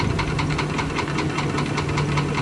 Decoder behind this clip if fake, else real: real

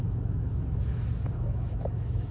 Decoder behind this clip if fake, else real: fake, autoencoder, DAC-VAE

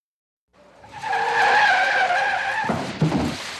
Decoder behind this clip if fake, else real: real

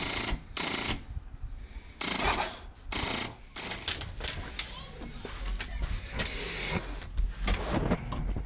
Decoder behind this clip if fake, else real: real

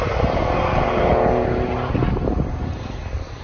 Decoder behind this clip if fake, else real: real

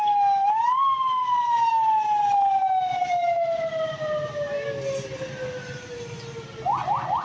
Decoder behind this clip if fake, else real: real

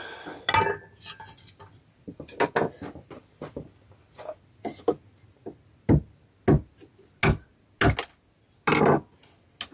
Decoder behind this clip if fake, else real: real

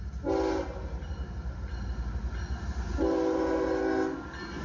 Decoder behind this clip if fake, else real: real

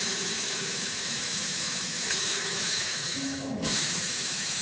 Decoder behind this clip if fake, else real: fake, autoencoder, DAC-VAE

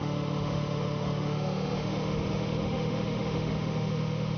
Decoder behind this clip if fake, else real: fake, autoencoder, DAC-VAE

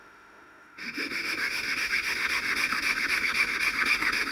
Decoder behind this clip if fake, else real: fake, autoencoder, DAC-VAE